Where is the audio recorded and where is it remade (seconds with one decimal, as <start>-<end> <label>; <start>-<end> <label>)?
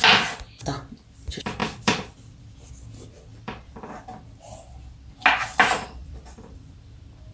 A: 0.0-1.6 recorded; 1.6-2.7 remade; 2.7-3.3 recorded; 3.3-3.9 remade; 3.9-6.0 recorded; 6.0-7.3 remade